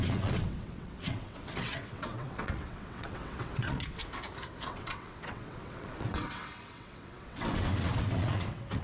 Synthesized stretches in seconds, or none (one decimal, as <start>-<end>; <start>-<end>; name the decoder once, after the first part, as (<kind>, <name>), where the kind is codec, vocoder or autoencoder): 0.0-4.0 (vocoder, WaveNeXt); 4.6-8.8